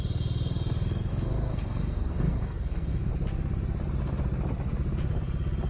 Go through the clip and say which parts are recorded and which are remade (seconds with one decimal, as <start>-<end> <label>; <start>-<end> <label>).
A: 0.0-1.1 recorded; 1.1-3.1 remade; 3.1-5.7 recorded